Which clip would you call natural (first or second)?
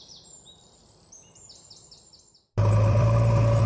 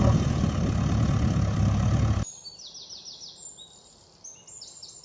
second